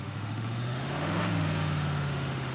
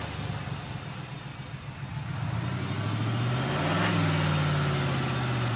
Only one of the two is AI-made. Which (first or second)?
first